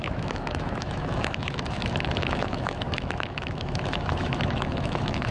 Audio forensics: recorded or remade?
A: remade